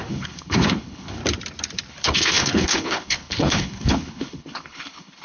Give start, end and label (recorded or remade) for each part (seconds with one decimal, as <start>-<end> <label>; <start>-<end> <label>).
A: 0.0-1.2 remade; 1.2-1.9 recorded; 1.9-5.2 remade